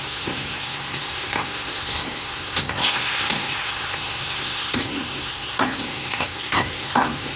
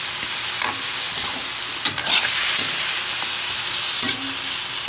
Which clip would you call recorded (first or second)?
second